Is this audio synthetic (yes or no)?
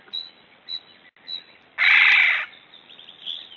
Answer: no